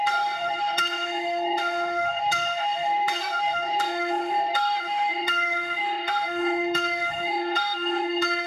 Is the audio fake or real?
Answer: fake